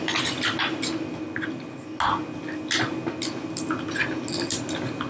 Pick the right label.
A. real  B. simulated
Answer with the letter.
A